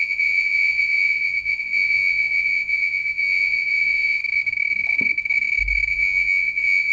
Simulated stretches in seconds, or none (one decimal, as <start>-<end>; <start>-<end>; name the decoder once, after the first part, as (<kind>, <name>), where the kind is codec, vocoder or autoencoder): 0.0-4.2 (vocoder, Vocos); 5.9-6.9

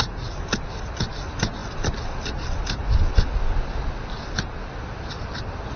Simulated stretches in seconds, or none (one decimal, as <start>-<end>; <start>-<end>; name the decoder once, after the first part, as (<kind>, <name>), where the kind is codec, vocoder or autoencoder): none

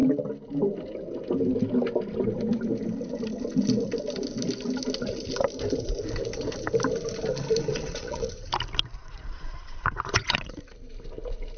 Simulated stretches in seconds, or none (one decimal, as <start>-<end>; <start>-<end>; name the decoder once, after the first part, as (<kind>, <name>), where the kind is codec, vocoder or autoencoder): 7.7-8.3 (vocoder, Vocos); 9.0-10.5

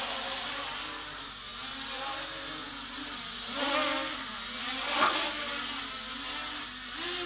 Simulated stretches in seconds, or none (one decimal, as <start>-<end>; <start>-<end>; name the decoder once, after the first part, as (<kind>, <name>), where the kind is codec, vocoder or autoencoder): none

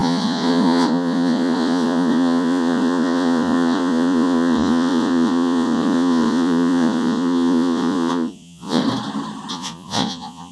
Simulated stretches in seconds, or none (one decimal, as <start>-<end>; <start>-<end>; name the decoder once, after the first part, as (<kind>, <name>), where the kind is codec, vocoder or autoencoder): 0.0-8.8 (vocoder, Vocos); 9.5-10.5

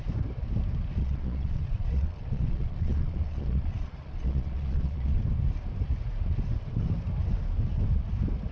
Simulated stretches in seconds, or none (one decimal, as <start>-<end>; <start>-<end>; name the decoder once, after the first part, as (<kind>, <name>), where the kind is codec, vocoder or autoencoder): 1.0-5.2 (vocoder, Vocos)

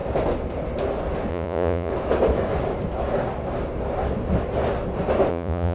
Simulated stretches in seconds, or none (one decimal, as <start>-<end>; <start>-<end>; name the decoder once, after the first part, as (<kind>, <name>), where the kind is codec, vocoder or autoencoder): 1.3-1.9 (vocoder, Vocos); 5.3-5.7

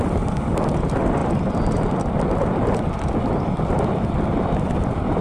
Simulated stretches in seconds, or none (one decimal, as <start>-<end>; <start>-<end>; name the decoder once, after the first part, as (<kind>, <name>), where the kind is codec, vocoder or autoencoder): none